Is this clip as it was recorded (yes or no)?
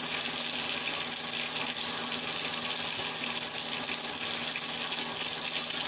yes